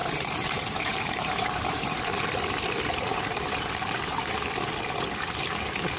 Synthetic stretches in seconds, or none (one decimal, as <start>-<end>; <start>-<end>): 0.0-2.0; 3.1-4.2